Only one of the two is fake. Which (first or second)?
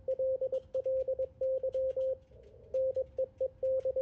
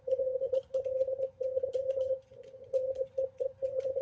second